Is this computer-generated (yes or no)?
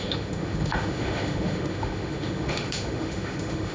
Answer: yes